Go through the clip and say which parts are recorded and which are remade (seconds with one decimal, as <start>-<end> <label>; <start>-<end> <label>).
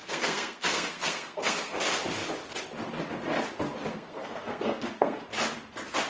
0.0-1.8 remade; 1.8-3.9 recorded; 3.9-5.2 remade; 5.2-6.1 recorded